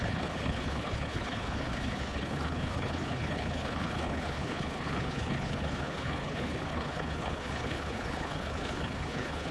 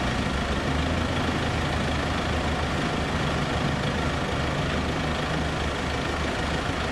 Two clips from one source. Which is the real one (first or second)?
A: second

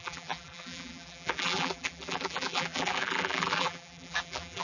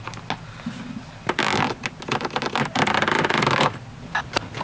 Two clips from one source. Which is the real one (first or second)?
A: second